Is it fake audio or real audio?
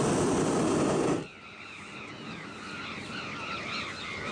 real